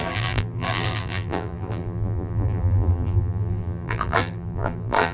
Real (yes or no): no